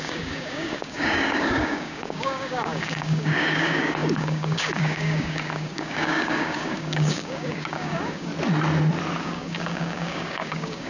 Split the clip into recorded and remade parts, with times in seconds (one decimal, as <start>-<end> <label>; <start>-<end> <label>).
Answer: 0.0-8.3 remade; 8.3-9.2 recorded; 9.2-10.9 remade